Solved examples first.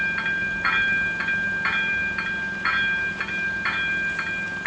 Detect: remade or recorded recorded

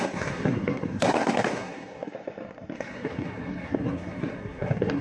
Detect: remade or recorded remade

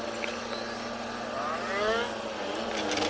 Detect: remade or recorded recorded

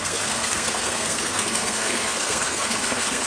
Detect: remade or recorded remade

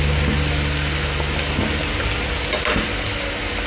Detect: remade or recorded recorded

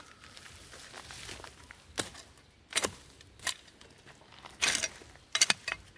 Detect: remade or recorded recorded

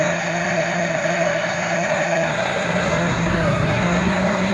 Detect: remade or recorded remade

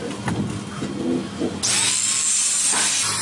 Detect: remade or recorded recorded